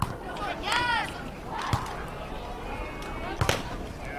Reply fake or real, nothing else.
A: real